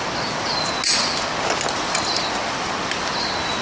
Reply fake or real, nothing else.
real